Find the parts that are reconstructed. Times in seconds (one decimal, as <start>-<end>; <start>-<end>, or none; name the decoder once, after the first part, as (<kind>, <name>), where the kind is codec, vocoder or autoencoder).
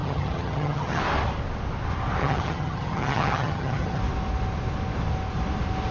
0.0-1.0 (vocoder, HiFi-GAN); 2.2-4.0